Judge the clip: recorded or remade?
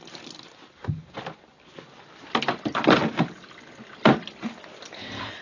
recorded